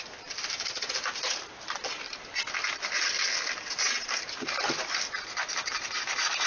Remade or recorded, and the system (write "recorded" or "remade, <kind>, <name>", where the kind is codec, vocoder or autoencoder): recorded